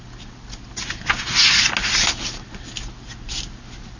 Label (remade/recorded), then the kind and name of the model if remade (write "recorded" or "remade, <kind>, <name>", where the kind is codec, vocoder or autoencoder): recorded